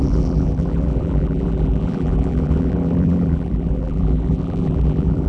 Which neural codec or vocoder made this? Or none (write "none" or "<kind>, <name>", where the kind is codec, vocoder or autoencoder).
vocoder, BigVGAN v2